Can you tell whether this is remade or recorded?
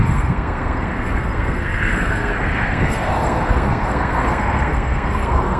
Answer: remade